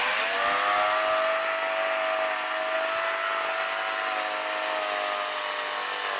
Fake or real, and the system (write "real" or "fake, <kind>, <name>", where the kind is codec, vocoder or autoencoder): real